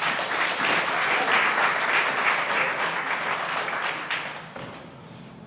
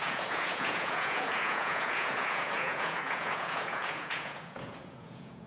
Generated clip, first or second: second